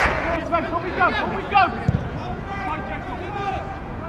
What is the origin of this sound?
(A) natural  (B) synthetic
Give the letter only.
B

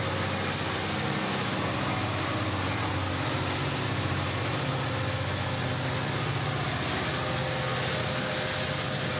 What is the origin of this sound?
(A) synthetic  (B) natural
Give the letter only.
B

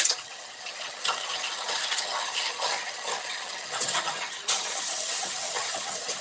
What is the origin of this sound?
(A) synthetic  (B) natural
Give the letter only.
A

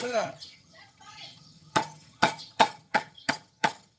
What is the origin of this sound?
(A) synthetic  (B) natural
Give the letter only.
A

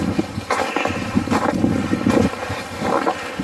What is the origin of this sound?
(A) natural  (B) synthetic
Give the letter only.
A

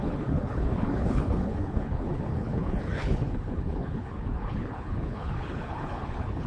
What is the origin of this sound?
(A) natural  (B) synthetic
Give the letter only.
B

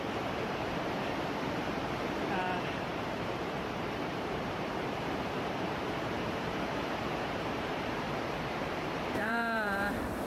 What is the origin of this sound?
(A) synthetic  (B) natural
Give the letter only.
A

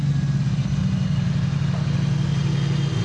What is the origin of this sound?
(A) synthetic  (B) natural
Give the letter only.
B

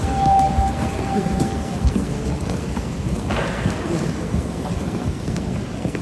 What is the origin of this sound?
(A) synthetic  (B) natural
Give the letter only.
A